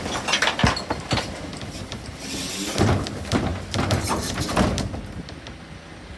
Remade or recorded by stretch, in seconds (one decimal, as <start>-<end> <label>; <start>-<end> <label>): 0.0-3.5 recorded; 3.5-4.5 remade; 4.5-6.2 recorded